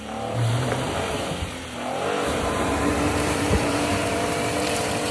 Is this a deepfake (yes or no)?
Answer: yes